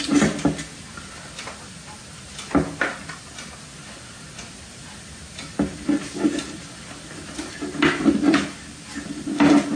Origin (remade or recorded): recorded